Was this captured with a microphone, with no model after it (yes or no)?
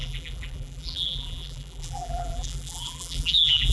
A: no